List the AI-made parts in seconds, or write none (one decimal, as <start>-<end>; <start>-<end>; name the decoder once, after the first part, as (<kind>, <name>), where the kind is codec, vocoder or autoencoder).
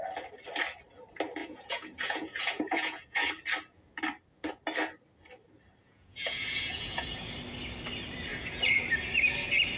1.4-3.3 (vocoder, Vocos); 5.8-7.3; 8.3-8.8